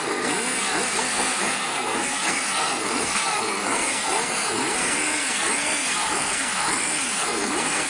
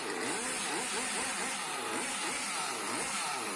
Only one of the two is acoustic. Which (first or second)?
second